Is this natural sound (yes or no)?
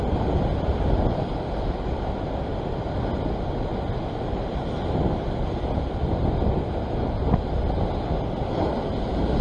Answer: yes